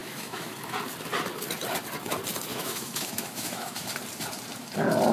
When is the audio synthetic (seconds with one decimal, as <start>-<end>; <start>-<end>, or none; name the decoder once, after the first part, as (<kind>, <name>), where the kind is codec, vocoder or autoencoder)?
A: 0.0-0.5 (autoencoder, DAC-VAE); 2.5-3.9